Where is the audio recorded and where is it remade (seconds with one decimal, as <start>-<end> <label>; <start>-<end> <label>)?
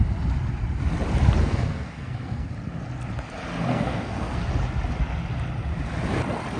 0.0-1.4 recorded; 1.4-2.5 remade; 2.5-3.7 recorded; 3.7-4.4 remade; 4.4-6.6 recorded